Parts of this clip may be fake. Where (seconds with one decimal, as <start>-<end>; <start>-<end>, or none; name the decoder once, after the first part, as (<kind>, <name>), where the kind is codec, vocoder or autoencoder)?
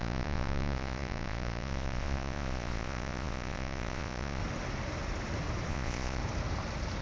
0.0-4.4 (vocoder, Vocos); 5.7-6.2